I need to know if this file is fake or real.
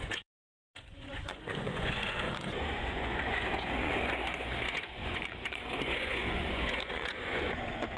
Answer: fake